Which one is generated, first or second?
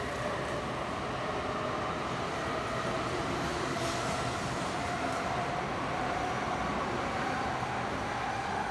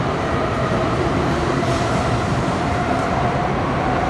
second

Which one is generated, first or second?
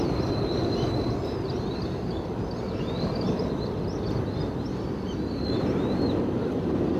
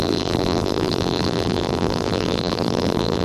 second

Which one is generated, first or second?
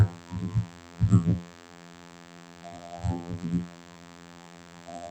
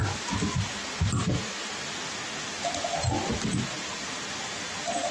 first